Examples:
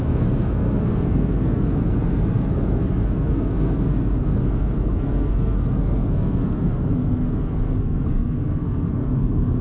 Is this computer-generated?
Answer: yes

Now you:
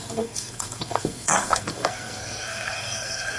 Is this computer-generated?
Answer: yes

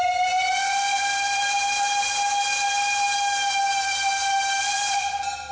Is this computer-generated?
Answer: no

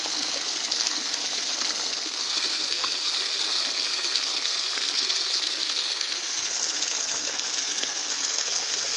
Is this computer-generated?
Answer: yes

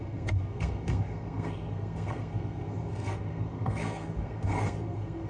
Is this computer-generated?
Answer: yes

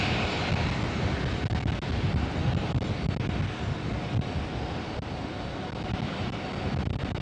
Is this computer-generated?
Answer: no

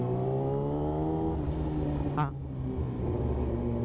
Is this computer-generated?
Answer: no